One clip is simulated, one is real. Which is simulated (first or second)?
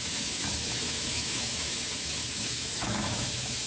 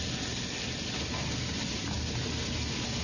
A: first